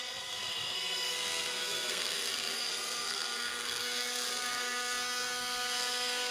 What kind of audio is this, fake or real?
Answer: fake